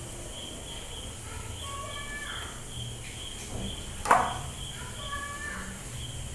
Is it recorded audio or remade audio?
recorded